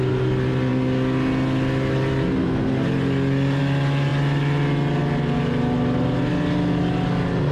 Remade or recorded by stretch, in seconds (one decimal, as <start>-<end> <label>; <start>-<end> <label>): 0.0-7.5 recorded